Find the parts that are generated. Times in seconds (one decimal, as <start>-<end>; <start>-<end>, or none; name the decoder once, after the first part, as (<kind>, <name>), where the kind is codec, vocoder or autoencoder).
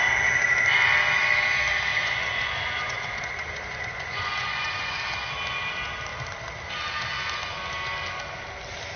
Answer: 1.9-5.0 (vocoder, Vocos)